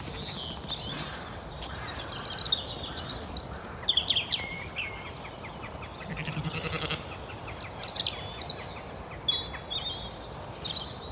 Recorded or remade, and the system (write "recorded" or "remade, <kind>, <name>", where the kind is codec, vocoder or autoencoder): recorded